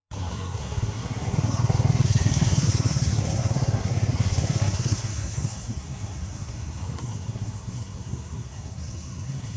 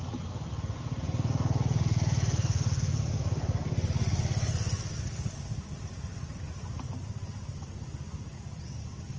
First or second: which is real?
second